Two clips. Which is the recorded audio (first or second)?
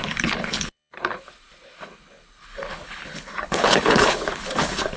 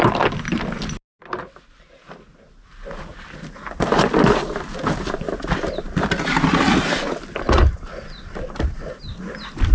second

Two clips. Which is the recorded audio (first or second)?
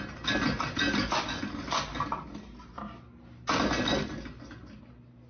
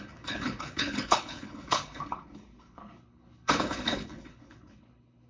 first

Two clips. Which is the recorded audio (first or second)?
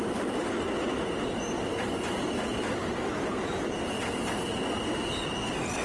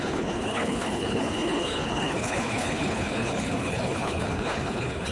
first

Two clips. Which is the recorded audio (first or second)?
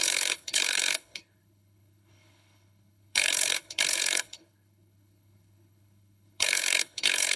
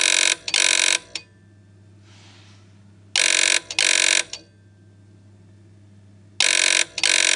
second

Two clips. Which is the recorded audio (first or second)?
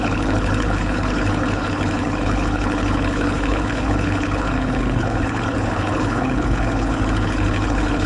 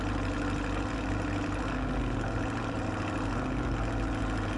second